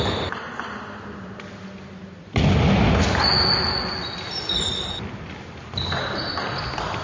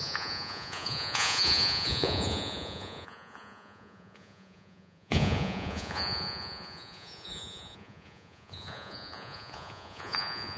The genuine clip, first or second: first